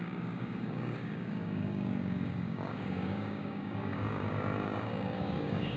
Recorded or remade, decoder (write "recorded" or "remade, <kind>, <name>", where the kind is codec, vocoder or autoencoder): remade, codec, DAC